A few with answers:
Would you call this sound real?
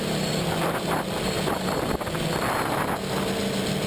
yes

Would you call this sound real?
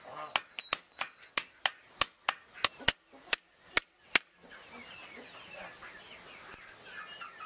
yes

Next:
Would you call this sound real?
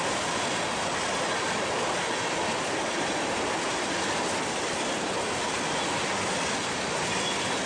yes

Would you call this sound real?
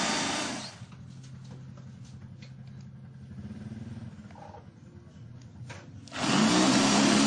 yes